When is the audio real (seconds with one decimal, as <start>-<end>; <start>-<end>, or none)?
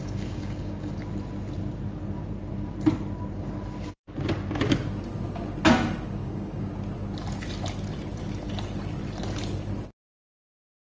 0.9-6.2; 6.7-10.9